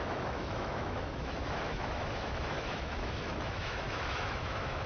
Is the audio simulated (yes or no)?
yes